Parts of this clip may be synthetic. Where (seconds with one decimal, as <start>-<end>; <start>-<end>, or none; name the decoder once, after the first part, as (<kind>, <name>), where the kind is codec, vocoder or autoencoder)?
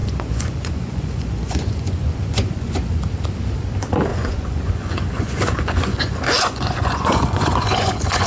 0.0-3.0 (vocoder, Vocos); 4.1-8.3